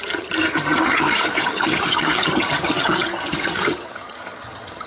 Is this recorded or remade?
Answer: remade